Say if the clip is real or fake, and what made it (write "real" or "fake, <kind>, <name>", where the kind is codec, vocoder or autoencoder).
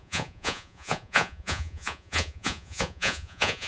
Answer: fake, vocoder, Vocos